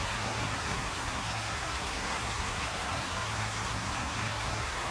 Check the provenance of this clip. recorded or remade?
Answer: remade